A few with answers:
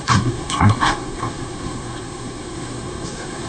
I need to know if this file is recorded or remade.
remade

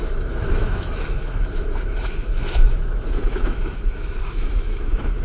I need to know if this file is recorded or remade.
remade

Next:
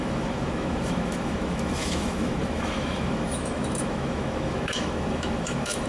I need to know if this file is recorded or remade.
remade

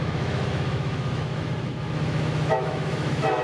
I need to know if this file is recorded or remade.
remade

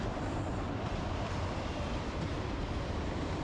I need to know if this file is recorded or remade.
remade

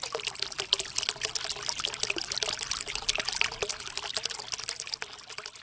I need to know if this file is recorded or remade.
recorded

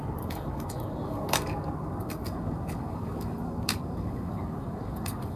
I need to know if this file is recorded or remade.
remade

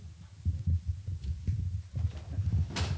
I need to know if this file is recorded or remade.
recorded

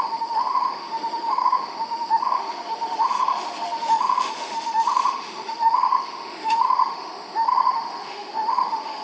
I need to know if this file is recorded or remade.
remade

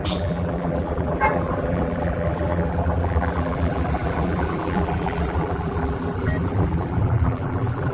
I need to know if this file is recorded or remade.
remade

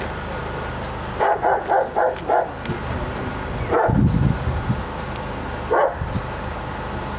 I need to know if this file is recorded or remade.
recorded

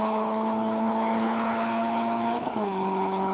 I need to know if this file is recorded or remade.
remade